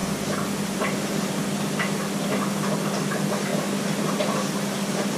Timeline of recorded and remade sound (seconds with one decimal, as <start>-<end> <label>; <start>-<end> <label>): 0.0-5.2 recorded